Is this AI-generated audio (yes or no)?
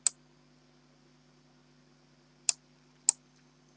no